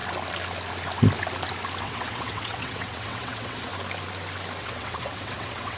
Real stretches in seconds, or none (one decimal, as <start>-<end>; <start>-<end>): 0.0-1.8; 3.7-4.6